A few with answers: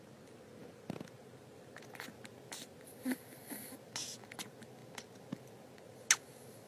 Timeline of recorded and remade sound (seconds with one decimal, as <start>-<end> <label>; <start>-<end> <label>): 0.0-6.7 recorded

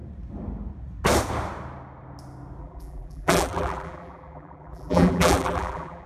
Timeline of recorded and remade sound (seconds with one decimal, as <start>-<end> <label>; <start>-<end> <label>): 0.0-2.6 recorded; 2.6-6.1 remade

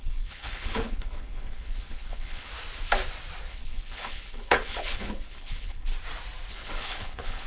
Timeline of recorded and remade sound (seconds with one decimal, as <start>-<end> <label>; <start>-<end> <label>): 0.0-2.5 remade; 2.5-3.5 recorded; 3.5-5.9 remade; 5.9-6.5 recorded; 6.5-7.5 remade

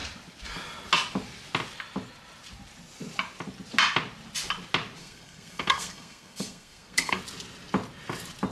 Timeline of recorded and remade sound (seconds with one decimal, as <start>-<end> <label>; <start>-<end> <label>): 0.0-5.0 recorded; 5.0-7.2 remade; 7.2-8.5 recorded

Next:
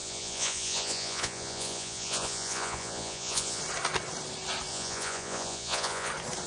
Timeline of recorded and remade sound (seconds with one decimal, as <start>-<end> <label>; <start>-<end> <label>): 0.0-3.6 remade; 3.6-4.7 recorded; 4.7-6.1 remade; 6.1-6.5 recorded